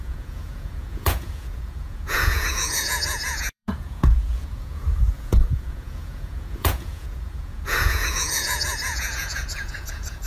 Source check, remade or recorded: remade